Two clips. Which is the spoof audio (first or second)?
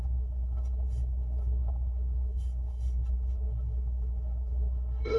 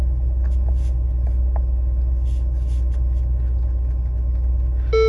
first